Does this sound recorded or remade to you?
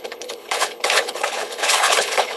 remade